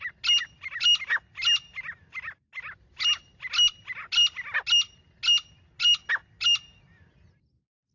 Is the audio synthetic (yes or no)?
no